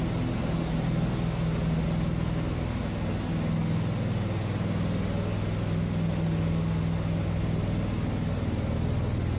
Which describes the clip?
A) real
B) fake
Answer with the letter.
A